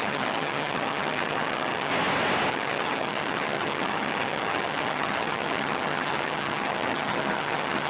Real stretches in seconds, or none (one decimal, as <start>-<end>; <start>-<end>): 1.9-2.5